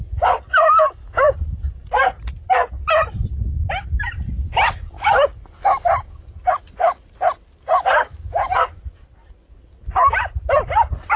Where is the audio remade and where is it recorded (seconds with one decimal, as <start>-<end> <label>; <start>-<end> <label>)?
0.0-5.6 recorded; 5.6-10.7 remade; 10.7-11.2 recorded